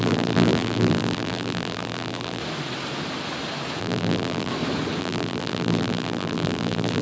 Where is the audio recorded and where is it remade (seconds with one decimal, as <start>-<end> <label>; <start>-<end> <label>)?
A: 0.0-2.4 remade; 2.4-3.8 recorded; 3.8-4.5 remade; 4.5-5.0 recorded; 5.0-7.0 remade